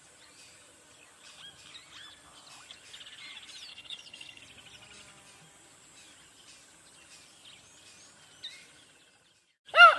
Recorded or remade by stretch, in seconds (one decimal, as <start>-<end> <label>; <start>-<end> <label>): 0.0-3.7 recorded; 3.7-4.4 remade; 4.4-10.0 recorded